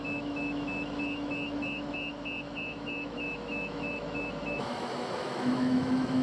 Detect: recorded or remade remade